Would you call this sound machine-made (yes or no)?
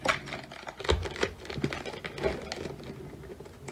no